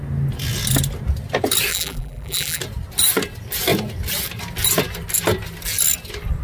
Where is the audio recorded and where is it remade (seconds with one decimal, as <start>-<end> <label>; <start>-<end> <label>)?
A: 0.0-1.7 recorded; 1.7-2.6 remade; 2.6-6.4 recorded